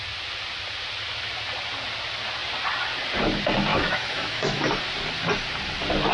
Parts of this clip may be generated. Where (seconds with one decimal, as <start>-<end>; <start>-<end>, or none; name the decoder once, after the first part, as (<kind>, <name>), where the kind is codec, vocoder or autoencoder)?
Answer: 3.7-4.6 (autoencoder, DAC-VAE)